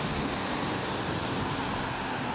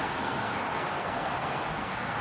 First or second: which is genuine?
first